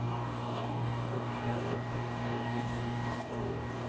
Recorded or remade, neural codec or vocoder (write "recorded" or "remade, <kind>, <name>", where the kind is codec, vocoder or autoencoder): remade, codec, DAC